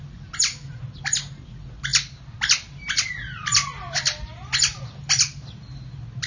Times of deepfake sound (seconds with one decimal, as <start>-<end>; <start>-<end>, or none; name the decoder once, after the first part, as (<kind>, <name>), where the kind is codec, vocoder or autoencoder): none